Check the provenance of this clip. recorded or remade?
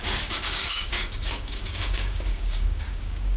remade